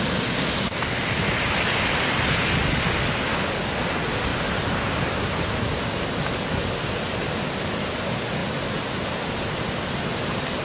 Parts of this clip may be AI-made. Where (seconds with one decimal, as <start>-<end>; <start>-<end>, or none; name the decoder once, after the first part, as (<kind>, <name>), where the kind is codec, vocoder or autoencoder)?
none